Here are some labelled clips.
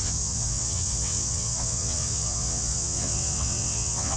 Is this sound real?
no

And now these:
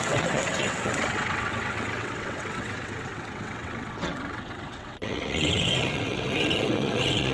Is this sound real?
no